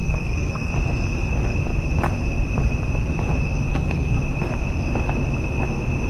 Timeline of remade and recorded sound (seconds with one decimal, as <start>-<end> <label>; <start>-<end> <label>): 0.0-0.7 remade; 0.7-3.7 recorded; 3.7-4.2 remade; 4.2-6.1 recorded